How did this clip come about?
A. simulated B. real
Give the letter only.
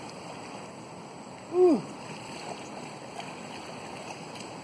B